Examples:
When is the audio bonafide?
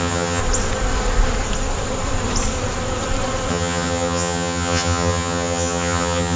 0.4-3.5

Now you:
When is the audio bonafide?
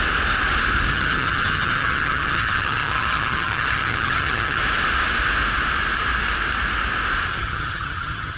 0.0-0.9; 4.6-7.3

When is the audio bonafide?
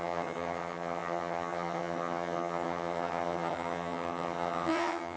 none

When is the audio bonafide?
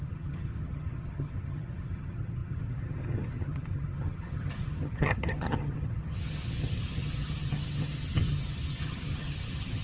none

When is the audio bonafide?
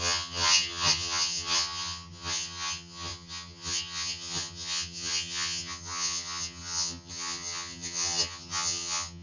none